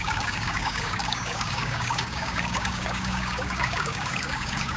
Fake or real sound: fake